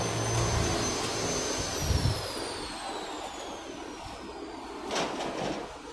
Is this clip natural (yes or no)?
yes